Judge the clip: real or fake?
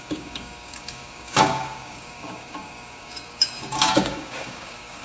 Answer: fake